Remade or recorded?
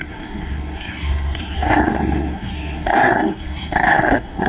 remade